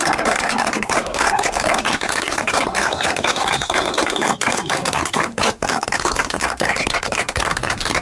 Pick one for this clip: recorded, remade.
remade